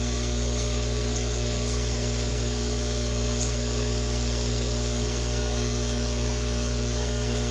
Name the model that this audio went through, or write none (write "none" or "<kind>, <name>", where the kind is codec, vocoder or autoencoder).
codec, SNAC